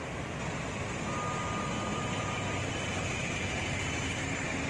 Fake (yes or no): no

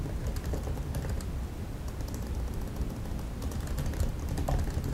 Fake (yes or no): no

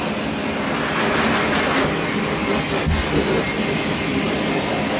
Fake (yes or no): no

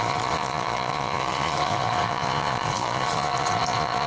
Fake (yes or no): yes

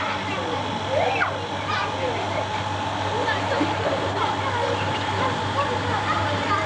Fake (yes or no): no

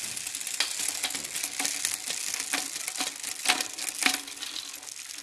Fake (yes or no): no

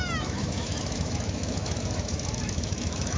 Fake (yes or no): yes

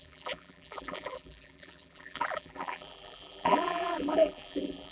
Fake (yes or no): yes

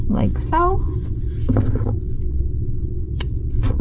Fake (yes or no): yes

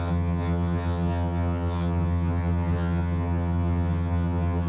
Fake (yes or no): yes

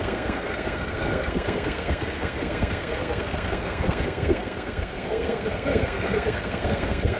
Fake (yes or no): yes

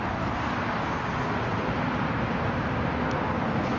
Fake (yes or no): no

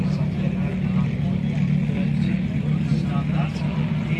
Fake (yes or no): no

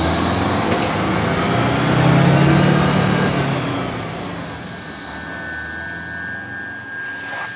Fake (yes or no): no